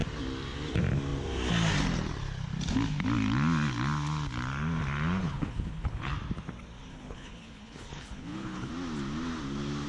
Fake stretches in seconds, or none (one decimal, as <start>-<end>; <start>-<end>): 5.2-6.1; 6.9-8.7

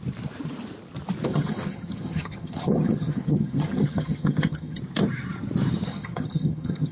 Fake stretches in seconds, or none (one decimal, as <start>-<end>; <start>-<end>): 1.3-4.8; 5.9-6.9

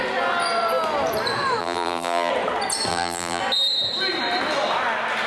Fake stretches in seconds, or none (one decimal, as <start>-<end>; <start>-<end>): 1.6-2.3; 2.9-3.4

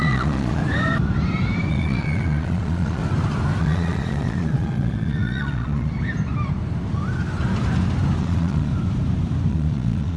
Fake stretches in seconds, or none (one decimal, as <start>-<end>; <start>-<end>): 0.0-0.6; 1.7-3.0; 3.6-5.9; 8.2-8.7; 9.5-10.2

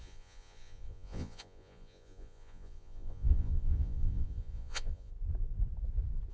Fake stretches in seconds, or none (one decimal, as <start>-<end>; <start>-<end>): 0.0-5.1

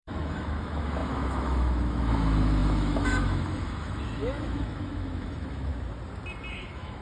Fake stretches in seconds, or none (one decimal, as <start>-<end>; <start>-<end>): 0.0-5.7; 6.5-7.0

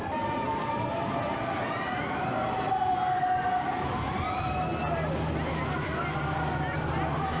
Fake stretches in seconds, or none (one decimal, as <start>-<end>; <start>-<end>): none

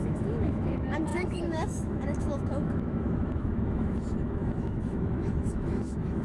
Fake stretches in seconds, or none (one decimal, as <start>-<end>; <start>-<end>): 0.0-6.2